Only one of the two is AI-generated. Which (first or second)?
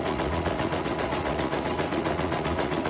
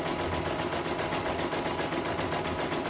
first